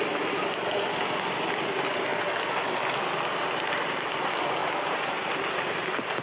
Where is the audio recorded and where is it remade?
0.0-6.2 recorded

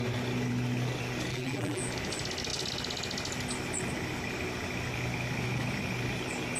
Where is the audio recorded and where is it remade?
0.0-1.3 recorded; 1.3-1.8 remade; 1.8-6.6 recorded

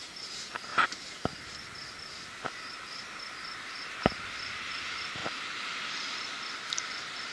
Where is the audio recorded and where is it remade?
0.0-7.3 recorded

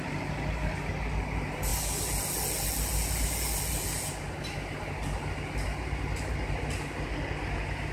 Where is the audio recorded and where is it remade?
0.0-7.9 recorded

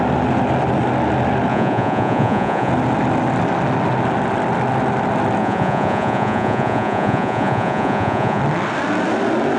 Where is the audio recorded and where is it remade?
0.0-1.5 recorded; 1.5-2.7 remade; 2.7-5.4 recorded; 5.4-8.4 remade; 8.4-9.6 recorded